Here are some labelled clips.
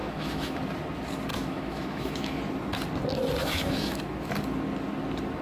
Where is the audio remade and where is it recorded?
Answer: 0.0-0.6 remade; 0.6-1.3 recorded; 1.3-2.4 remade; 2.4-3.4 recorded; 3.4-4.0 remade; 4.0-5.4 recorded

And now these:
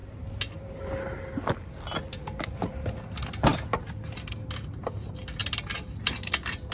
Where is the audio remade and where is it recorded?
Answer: 0.0-6.7 recorded

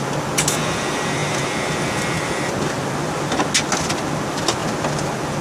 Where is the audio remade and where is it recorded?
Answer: 0.0-5.4 recorded

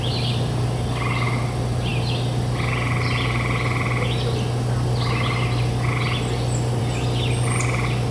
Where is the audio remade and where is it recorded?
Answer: 0.0-8.1 recorded

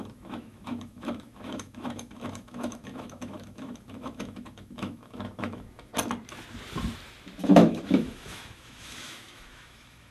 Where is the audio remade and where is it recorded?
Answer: 0.0-5.9 remade; 5.9-7.4 recorded; 7.4-10.1 remade

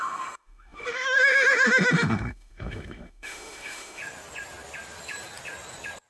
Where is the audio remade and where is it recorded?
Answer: 0.0-4.0 remade; 4.0-6.1 recorded

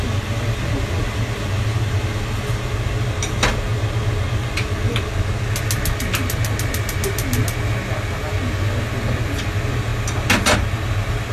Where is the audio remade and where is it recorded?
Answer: 0.0-11.3 recorded